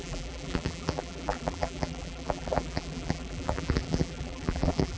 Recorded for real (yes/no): no